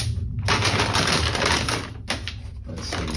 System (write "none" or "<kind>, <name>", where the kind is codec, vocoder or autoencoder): none